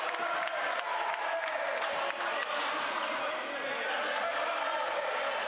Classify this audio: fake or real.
real